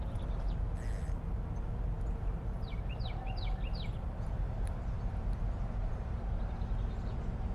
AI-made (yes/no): no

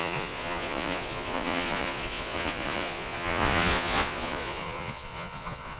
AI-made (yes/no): yes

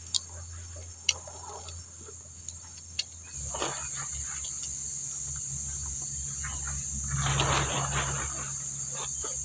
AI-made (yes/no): no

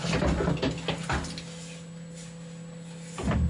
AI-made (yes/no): no